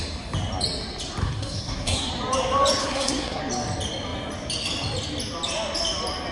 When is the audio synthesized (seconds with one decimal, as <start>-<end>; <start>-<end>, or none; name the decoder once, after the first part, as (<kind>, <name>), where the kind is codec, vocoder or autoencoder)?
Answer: 1.2-2.1 (codec, SNAC); 2.8-3.4